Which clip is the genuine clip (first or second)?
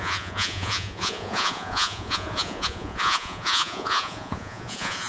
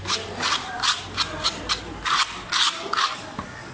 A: second